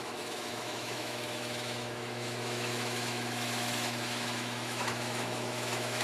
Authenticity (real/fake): fake